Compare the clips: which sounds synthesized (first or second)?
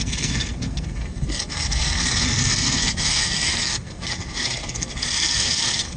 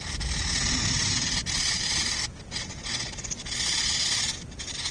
first